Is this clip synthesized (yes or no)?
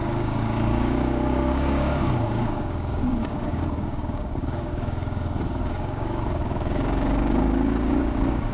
yes